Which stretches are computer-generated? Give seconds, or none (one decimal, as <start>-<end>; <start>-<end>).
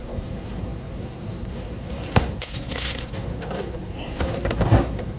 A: 0.0-5.2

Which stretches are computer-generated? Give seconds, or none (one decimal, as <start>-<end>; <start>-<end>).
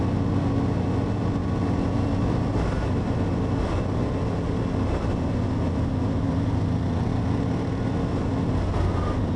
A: none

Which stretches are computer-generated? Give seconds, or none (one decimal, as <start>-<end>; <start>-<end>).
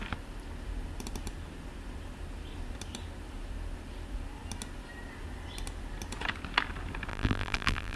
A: 7.1-8.0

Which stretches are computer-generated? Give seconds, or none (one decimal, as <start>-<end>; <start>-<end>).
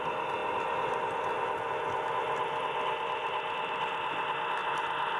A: none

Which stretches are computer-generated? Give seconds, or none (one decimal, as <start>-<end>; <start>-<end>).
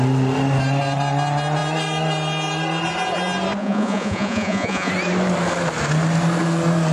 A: 3.6-4.9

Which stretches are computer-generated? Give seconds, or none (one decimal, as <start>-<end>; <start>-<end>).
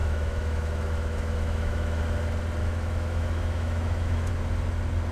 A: 0.0-2.0; 2.6-4.3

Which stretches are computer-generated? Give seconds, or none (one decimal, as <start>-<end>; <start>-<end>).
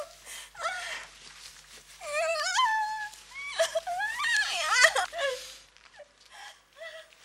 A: 2.3-6.3